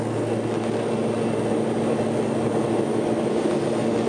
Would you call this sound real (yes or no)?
yes